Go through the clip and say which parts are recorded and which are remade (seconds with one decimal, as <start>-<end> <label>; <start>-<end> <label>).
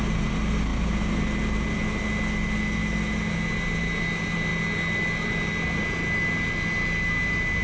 0.0-7.6 recorded